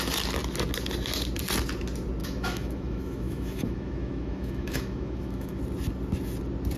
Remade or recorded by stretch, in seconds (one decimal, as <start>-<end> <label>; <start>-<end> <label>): 0.0-2.2 recorded; 2.2-5.6 remade; 5.6-6.8 recorded